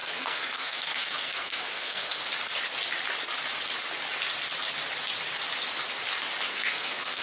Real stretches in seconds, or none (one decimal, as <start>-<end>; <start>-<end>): 2.2-6.5